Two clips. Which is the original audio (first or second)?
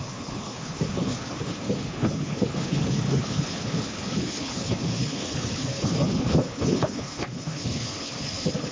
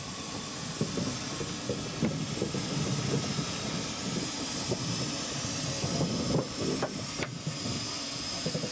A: second